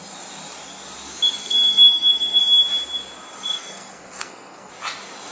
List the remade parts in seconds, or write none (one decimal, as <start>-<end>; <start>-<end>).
1.4-2.4; 3.6-4.7